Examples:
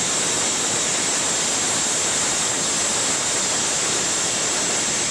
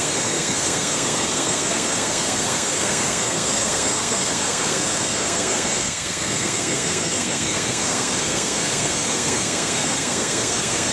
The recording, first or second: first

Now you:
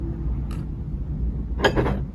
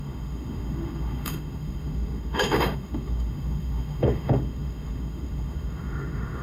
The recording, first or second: first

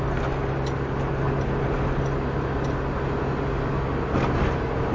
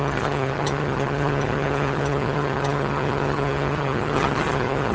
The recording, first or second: first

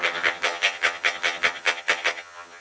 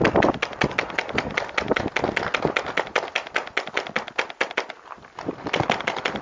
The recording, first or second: second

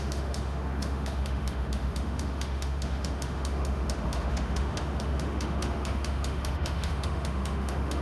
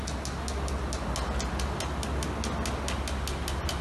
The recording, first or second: second